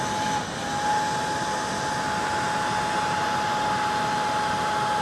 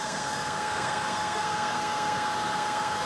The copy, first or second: second